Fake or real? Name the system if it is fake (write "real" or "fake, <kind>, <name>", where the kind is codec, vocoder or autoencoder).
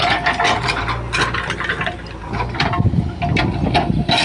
real